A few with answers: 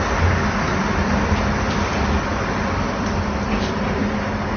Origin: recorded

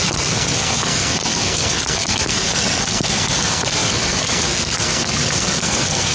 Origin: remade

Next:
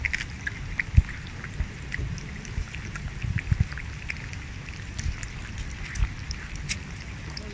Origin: recorded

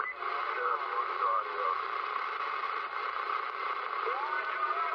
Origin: recorded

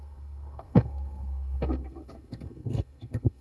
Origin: remade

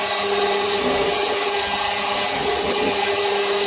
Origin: recorded